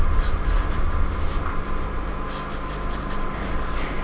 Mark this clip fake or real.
real